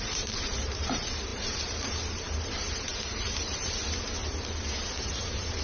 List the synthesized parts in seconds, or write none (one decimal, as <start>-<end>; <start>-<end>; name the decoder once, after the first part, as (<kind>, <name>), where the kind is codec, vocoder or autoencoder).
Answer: 0.0-4.2 (vocoder, BigVGAN v2); 5.0-5.6

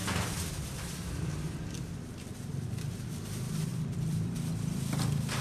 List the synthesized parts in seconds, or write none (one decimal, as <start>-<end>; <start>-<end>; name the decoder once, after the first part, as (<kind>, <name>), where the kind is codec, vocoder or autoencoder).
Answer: 0.0-3.2 (vocoder, BigVGAN v2); 3.7-5.4

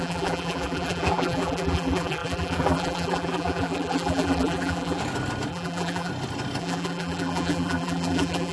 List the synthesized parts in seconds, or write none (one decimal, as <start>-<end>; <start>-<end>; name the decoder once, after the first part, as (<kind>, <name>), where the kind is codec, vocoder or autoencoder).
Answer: 0.0-5.0 (vocoder, BigVGAN v2); 5.5-6.1; 6.6-8.5

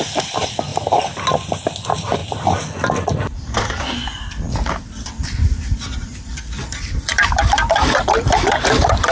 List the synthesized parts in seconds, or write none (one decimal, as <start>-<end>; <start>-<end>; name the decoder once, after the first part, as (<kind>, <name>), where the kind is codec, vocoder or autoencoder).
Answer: 0.0-0.7 (vocoder, BigVGAN v2); 1.6-2.2; 4.7-9.1

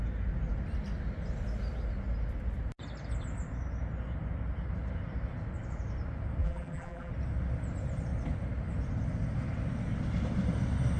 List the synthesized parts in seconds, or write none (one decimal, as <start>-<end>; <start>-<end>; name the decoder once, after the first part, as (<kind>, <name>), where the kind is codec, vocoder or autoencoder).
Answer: 6.4-7.1 (vocoder, BigVGAN v2)